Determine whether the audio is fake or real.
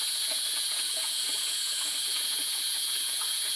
fake